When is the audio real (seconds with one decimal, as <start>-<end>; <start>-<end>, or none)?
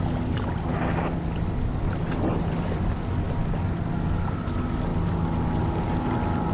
0.0-6.5